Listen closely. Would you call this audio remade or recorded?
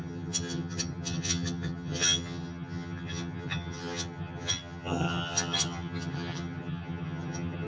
remade